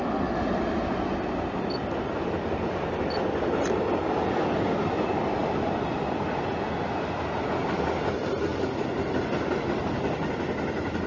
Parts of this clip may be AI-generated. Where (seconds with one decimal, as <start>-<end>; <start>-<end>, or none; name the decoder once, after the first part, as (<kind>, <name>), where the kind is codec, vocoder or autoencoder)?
none